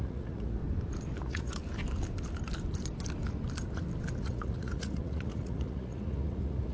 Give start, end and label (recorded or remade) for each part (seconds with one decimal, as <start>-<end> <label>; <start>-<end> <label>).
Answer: 0.0-0.6 remade; 0.6-1.2 recorded; 1.2-1.6 remade; 1.6-4.2 recorded; 4.2-6.7 remade